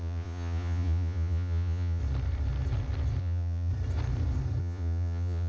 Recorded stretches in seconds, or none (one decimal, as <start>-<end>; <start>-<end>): 2.0-3.2; 3.7-4.6

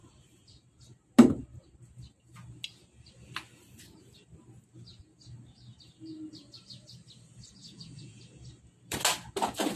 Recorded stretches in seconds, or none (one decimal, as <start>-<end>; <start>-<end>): 0.0-7.6; 8.2-9.8

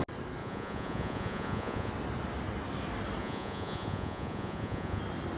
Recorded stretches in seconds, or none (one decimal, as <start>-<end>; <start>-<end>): 0.0-0.4; 1.9-3.2; 5.0-5.4

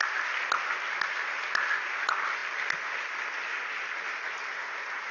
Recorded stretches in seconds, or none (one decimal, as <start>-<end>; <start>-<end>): 0.0-5.1

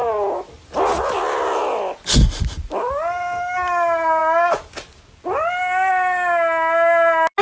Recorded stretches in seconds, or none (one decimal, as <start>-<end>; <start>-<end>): 0.0-7.4

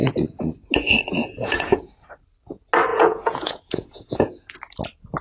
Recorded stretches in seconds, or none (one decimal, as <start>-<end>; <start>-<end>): 0.0-1.2; 1.9-2.9; 4.6-5.2

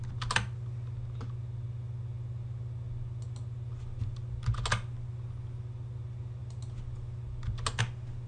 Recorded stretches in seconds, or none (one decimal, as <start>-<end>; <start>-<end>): 0.0-8.3

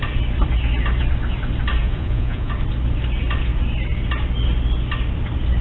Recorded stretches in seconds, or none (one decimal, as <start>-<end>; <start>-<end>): 0.0-1.8; 2.5-5.6